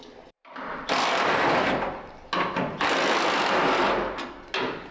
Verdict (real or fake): real